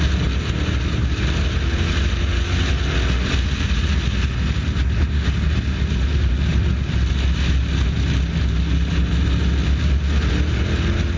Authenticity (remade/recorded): recorded